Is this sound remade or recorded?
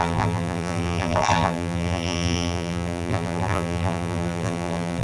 remade